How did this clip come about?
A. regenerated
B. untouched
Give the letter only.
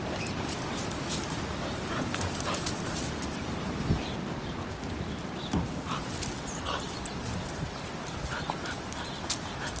B